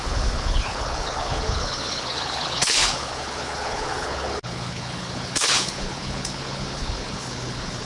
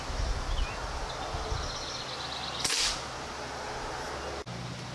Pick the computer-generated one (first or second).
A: first